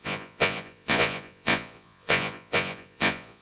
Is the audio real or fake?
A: fake